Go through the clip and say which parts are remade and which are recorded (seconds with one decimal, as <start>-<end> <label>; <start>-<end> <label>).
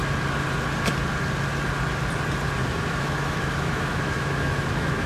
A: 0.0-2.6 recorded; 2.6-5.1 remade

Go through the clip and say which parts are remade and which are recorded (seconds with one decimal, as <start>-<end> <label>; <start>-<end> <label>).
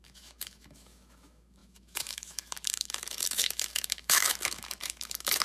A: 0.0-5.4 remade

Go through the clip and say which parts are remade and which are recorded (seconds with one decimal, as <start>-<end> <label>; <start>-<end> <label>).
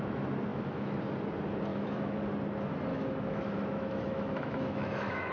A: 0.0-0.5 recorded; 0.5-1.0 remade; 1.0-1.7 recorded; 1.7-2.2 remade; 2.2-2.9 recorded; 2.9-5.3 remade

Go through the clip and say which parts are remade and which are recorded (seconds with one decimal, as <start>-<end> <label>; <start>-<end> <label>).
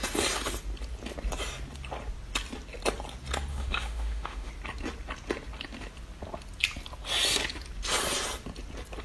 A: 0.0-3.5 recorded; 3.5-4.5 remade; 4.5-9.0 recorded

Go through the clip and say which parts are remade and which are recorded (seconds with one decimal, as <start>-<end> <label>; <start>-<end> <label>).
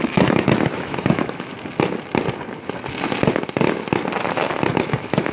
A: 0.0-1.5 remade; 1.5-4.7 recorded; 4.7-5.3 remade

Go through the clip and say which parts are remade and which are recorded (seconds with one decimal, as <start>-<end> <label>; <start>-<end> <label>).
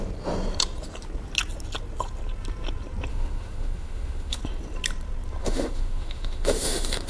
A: 0.0-3.1 recorded; 3.1-4.4 remade; 4.4-5.4 recorded; 5.4-7.1 remade